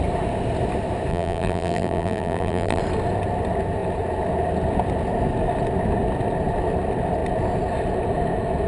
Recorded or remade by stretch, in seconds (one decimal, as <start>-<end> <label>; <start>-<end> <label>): 0.0-1.1 recorded; 1.1-2.8 remade; 2.8-8.7 recorded